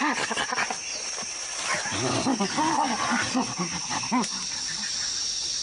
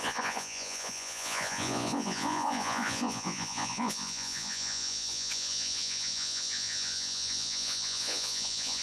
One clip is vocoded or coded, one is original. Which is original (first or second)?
first